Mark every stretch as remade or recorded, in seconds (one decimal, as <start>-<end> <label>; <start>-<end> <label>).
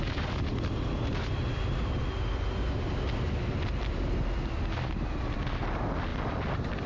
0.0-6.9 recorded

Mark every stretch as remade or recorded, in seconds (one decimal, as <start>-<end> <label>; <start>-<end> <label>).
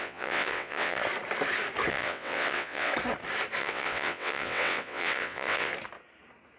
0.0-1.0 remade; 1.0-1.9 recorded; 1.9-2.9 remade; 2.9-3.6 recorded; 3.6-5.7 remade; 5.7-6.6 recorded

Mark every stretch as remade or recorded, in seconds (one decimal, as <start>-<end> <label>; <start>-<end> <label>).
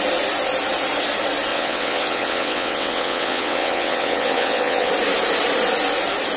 0.0-1.5 recorded; 1.5-4.9 remade; 4.9-6.4 recorded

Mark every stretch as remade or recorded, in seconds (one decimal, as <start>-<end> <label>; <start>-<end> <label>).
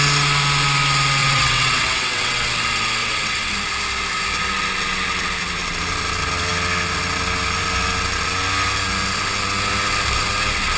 0.0-1.2 recorded; 1.2-2.4 remade; 2.4-3.0 recorded; 3.0-3.5 remade; 3.5-10.8 recorded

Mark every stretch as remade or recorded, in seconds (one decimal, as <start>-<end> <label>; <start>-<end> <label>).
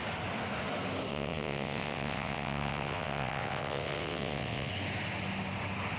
0.0-1.1 recorded; 1.1-4.7 remade; 4.7-6.0 recorded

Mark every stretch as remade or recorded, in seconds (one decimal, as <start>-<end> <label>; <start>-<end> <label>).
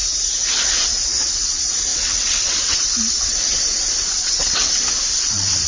0.0-0.6 recorded; 0.6-5.7 remade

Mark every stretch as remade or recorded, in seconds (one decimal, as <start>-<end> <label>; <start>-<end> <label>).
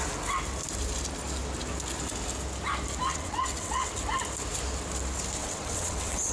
0.0-3.1 recorded; 3.1-3.9 remade; 3.9-5.4 recorded; 5.4-6.3 remade